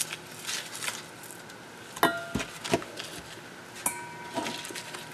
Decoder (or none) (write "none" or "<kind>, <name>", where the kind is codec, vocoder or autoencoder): none